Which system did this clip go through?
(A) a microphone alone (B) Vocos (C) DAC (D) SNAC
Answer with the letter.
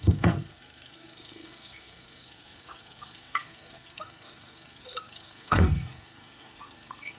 D